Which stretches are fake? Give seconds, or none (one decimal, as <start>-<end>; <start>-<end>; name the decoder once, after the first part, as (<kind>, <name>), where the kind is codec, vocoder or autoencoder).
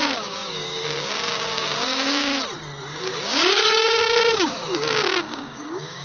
0.0-2.3 (codec, DAC); 2.8-6.0